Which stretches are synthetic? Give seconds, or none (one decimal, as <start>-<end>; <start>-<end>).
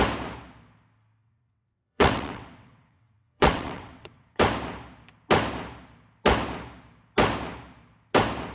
1.2-4.4